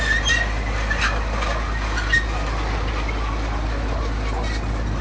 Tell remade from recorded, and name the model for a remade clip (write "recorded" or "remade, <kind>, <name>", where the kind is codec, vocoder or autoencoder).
recorded